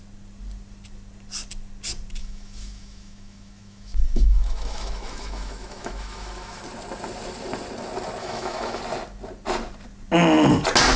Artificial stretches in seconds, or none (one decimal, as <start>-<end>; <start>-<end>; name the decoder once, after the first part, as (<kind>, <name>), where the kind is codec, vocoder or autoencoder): 2.2-6.6 (autoencoder, DAC-VAE); 8.2-8.8